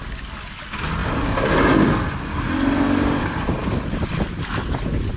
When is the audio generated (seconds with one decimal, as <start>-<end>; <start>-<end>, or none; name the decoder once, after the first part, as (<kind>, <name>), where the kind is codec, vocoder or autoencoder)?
none